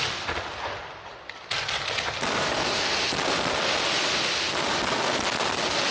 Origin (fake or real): real